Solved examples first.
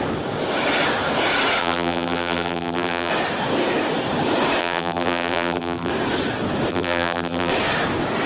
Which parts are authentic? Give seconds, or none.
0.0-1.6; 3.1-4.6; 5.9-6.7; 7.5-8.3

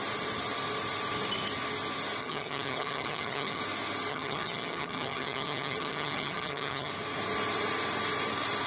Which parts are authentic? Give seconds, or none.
0.0-2.2; 3.6-4.1; 6.9-8.7

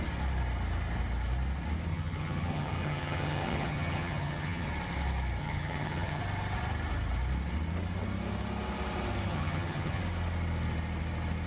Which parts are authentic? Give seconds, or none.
0.0-1.9; 4.7-5.4; 6.2-9.3; 10.0-11.5